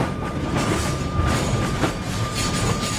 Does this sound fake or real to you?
fake